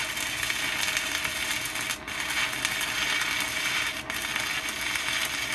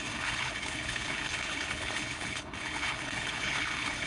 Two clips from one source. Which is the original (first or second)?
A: first